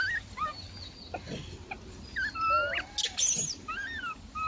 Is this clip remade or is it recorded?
recorded